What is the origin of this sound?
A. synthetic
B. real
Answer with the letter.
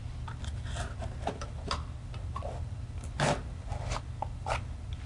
B